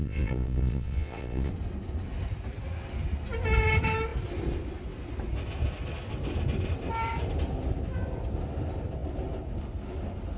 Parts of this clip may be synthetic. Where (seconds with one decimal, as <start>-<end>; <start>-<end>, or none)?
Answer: 0.0-1.5